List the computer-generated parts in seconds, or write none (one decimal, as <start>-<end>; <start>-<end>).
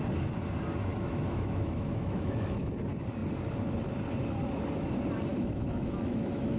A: 0.9-2.7; 5.3-6.6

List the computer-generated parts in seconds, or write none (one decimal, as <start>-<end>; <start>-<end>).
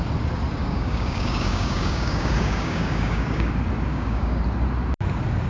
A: 0.6-3.5; 3.9-4.4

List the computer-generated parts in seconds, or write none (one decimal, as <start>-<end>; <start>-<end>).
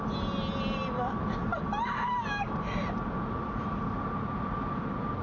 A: none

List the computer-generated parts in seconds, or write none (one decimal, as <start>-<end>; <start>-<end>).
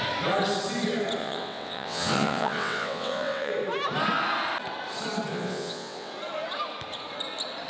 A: 1.2-3.5; 5.3-6.1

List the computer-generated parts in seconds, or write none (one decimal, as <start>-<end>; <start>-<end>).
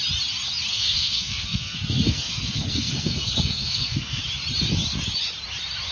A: 0.7-4.2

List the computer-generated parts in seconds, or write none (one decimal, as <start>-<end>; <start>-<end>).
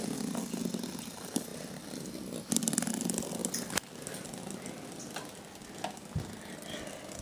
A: none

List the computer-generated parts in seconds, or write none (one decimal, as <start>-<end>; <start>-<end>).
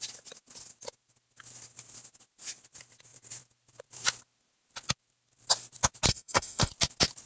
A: 6.1-6.7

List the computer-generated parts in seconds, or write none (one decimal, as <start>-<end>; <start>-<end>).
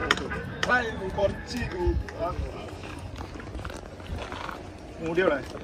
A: 0.0-0.7; 1.2-3.1